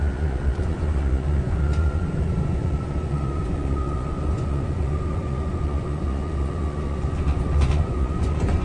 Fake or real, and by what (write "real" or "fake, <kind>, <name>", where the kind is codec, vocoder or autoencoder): fake, vocoder, Vocos